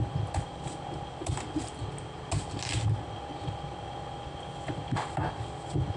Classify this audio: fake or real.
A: real